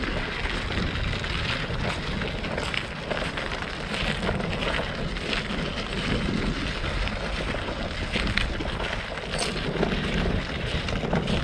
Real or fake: real